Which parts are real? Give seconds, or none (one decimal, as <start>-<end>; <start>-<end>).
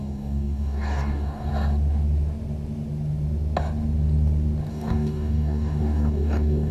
1.5-4.7